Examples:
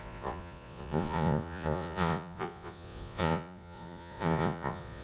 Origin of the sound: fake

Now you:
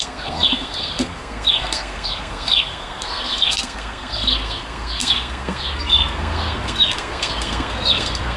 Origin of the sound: fake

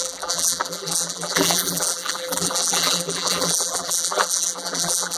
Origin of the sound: fake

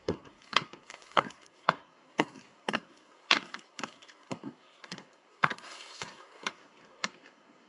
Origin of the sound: fake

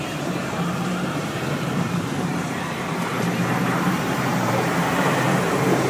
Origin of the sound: fake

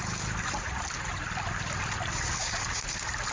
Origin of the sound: real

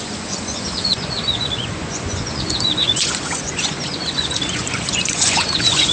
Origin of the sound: fake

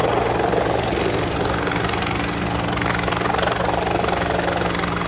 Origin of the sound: real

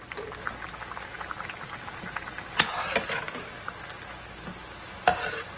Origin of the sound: real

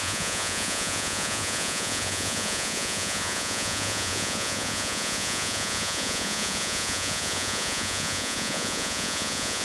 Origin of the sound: fake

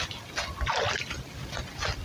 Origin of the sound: real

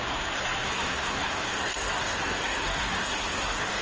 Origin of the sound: fake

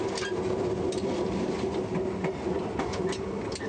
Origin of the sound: real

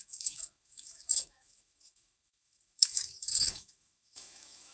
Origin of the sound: fake